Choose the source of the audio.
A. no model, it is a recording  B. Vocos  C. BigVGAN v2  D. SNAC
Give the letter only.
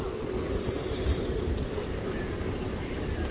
A